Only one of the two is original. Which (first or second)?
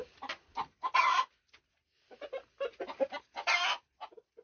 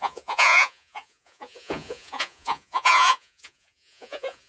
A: first